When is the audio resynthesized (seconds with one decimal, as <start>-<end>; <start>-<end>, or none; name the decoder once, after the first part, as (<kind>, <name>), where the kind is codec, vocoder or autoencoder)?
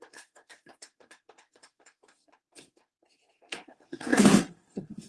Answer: 0.0-5.1 (codec, SNAC)